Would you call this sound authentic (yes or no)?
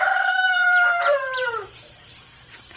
no